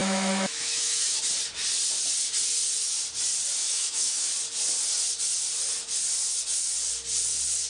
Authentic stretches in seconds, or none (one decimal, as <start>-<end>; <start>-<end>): 1.2-3.6; 4.3-7.7